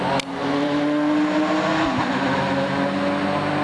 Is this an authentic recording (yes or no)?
yes